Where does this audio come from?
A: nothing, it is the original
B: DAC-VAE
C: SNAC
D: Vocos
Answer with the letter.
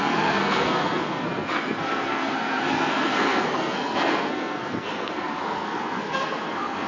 C